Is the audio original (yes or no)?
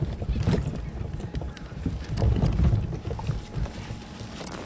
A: yes